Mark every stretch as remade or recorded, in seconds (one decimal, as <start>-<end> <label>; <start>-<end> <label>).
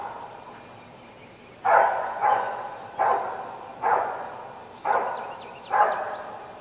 0.0-1.8 recorded; 1.8-2.6 remade; 2.6-3.7 recorded; 3.7-4.3 remade; 4.3-6.6 recorded